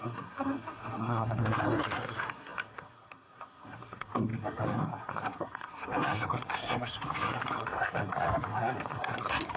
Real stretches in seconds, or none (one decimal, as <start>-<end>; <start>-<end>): none